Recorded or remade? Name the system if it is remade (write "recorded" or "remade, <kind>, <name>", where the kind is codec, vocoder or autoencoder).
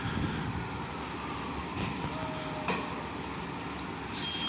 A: recorded